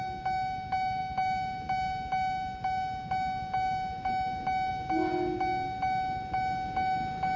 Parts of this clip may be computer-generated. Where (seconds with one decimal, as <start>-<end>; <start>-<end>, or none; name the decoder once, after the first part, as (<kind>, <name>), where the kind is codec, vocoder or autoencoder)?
none